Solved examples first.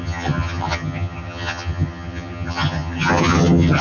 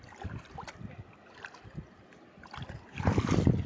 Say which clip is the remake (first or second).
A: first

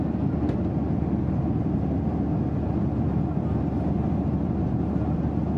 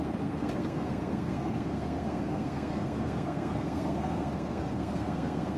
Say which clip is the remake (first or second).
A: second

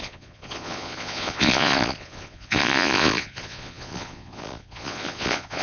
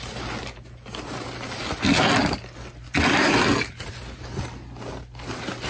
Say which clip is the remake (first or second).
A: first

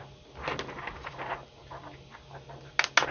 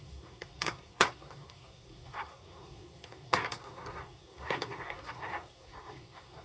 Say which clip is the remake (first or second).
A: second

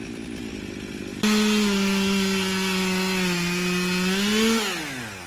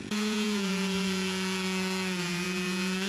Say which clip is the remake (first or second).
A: second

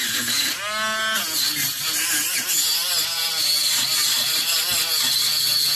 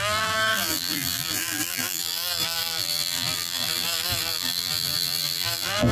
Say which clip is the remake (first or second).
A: second